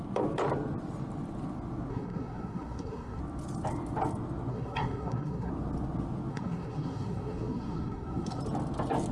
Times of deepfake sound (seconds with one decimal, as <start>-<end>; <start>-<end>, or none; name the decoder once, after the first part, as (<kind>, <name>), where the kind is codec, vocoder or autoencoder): 1.9-3.2 (codec, SNAC); 4.5-5.5; 6.3-8.4